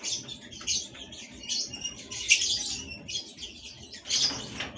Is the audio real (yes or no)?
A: yes